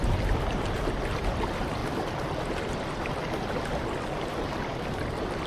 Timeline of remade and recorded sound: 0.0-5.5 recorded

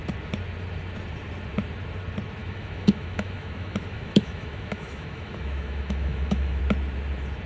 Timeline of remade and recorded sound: 0.0-2.4 recorded; 2.4-6.6 remade; 6.6-7.5 recorded

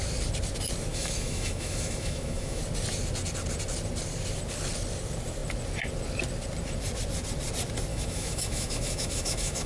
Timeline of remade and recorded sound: 0.0-0.9 recorded; 0.9-2.6 remade; 2.6-7.9 recorded; 7.9-9.7 remade

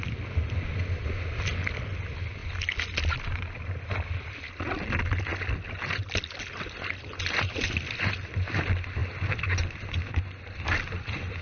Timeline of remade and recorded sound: 0.0-11.4 recorded